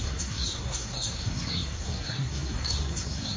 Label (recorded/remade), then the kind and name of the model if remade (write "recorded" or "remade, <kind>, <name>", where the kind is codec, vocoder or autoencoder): remade, codec, SNAC